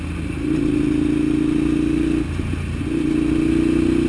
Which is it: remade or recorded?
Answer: recorded